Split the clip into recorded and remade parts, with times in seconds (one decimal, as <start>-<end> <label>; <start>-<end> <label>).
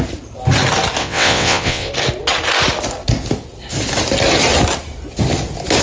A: 0.0-1.0 recorded; 1.0-1.9 remade; 1.9-5.8 recorded